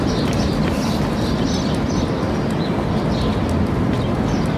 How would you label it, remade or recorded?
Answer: recorded